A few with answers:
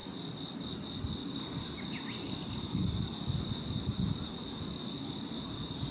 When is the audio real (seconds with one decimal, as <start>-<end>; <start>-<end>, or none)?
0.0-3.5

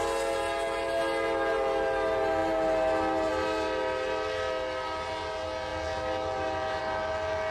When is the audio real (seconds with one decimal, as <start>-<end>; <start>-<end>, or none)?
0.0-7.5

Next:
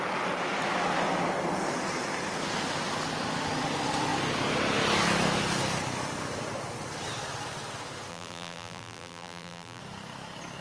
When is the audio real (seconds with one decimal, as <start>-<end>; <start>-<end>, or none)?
0.0-8.1; 9.8-10.6